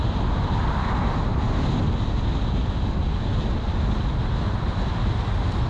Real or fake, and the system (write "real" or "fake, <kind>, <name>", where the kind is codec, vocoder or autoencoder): real